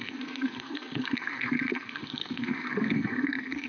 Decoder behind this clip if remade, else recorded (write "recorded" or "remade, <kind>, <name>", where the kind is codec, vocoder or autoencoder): remade, codec, SNAC